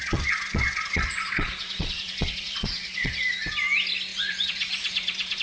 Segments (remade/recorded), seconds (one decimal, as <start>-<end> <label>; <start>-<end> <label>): 0.0-3.2 remade; 3.2-4.1 recorded; 4.1-5.4 remade